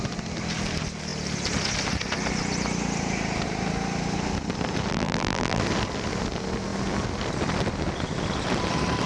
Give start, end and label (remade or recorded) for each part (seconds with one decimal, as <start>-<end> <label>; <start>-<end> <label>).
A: 0.0-4.9 recorded; 4.9-5.6 remade; 5.6-9.1 recorded

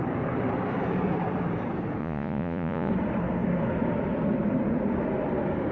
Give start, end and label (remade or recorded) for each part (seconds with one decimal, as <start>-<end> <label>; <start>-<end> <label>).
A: 0.0-2.0 recorded; 2.0-2.9 remade; 2.9-5.7 recorded

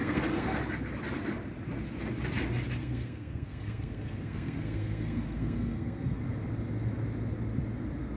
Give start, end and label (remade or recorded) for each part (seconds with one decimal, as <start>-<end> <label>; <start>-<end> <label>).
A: 0.0-0.6 remade; 0.6-2.8 recorded; 2.8-6.2 remade; 6.2-8.2 recorded

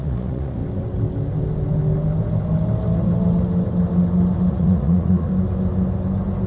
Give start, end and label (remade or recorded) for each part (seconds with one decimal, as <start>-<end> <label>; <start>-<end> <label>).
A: 0.0-0.6 remade; 0.6-4.5 recorded; 4.5-5.3 remade; 5.3-6.5 recorded